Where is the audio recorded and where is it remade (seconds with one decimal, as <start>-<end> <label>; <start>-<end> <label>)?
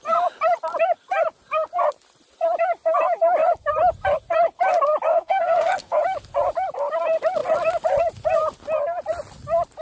0.0-5.1 recorded; 5.1-6.0 remade; 6.0-9.8 recorded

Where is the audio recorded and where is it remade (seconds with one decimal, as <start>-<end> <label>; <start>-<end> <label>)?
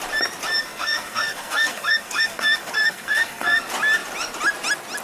0.0-0.6 recorded; 0.6-3.6 remade; 3.6-5.0 recorded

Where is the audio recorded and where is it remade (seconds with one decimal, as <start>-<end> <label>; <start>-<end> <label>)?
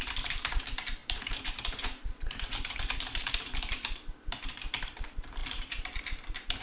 0.0-6.6 remade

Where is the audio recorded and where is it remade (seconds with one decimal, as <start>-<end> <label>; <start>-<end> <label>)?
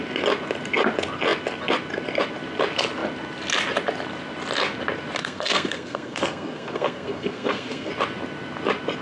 0.0-5.2 recorded; 5.2-7.9 remade; 7.9-9.0 recorded